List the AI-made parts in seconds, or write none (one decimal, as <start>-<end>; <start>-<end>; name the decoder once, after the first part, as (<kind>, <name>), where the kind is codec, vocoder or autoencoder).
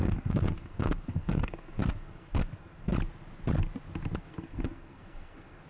0.0-2.9 (codec, SNAC); 4.2-5.7